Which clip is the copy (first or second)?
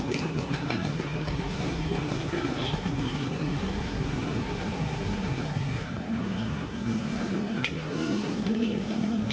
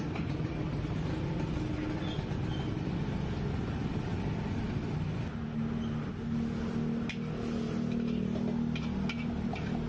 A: first